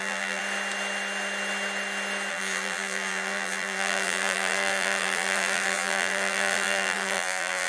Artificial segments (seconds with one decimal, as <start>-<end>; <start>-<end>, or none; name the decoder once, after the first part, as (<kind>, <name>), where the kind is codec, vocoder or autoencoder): 0.0-0.4 (vocoder, BigVGAN v2); 2.3-7.7